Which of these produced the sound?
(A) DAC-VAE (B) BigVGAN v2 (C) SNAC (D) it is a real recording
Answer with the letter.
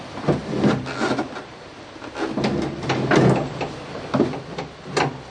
D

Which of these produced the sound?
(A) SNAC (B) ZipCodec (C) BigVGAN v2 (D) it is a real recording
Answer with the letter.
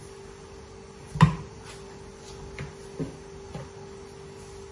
D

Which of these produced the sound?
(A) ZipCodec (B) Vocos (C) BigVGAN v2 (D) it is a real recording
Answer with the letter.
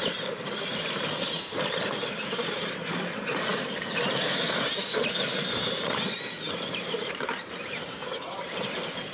C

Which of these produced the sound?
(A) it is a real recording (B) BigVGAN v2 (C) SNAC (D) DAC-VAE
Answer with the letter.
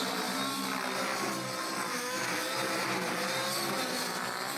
A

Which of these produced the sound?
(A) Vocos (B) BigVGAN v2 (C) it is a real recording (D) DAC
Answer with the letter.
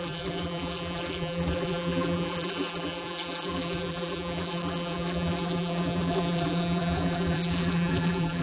B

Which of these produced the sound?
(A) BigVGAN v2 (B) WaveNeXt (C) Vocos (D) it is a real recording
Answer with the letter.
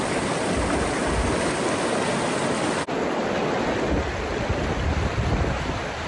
D